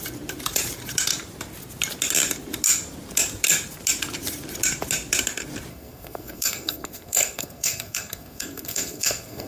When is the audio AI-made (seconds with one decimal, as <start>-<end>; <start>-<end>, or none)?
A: 5.7-9.5